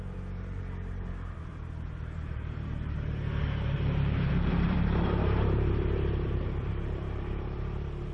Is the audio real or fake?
fake